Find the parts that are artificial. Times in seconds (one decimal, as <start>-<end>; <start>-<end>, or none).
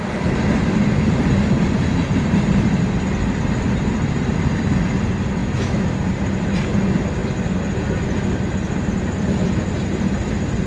5.4-5.9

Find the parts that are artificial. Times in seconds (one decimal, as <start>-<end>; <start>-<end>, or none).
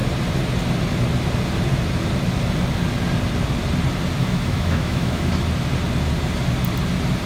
4.2-5.3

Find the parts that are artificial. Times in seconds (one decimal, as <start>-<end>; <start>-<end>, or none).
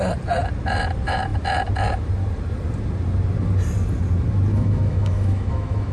4.5-5.9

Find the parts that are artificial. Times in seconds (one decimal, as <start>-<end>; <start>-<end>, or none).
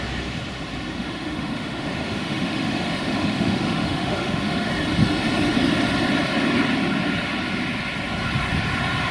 1.0-4.7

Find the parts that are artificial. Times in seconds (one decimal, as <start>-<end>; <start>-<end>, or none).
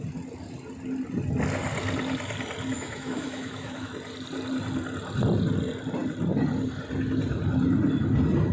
2.7-3.9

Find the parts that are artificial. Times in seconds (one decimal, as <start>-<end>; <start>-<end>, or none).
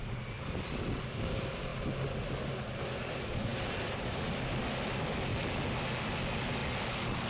none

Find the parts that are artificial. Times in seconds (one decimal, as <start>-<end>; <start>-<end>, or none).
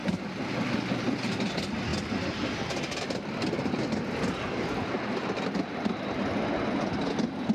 none